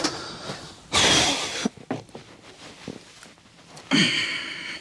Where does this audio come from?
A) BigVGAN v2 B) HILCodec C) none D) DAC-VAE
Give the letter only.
C